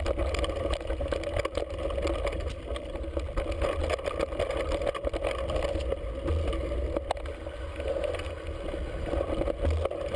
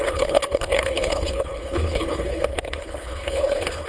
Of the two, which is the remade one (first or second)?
second